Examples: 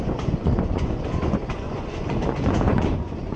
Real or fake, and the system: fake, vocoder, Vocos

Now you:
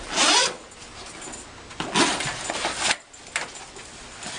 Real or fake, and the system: real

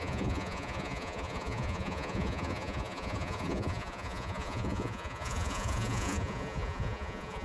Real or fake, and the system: fake, vocoder, Vocos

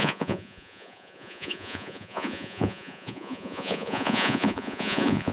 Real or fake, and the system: fake, vocoder, Vocos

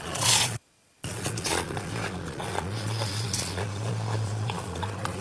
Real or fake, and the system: fake, vocoder, Vocos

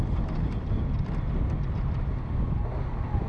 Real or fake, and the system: real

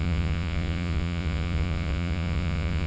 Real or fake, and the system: fake, vocoder, Vocos